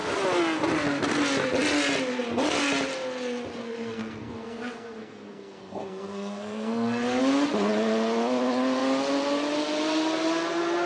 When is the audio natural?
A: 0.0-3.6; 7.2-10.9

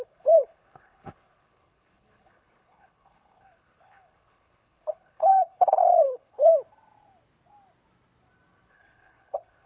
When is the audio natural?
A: 6.5-8.7

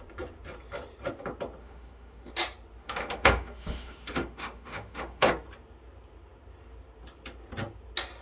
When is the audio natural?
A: 0.0-1.6; 2.3-2.8; 5.3-8.2

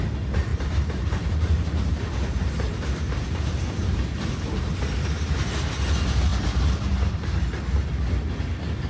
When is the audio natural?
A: 0.0-0.5; 5.5-8.9

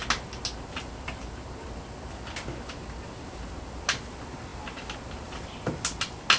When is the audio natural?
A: 0.0-6.4

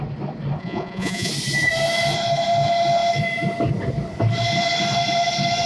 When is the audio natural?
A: 0.0-0.6; 1.3-5.7

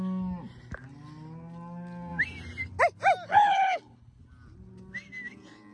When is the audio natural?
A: 0.0-3.3; 4.2-5.7